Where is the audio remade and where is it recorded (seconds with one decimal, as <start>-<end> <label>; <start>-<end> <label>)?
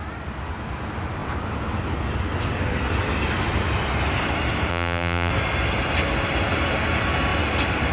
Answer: 0.0-4.7 recorded; 4.7-5.3 remade; 5.3-7.9 recorded